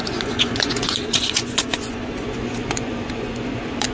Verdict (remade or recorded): remade